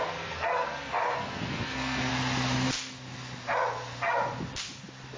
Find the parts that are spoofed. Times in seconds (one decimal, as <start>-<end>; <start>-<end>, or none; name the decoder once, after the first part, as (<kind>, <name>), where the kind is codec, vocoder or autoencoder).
0.0-2.1 (codec, SNAC)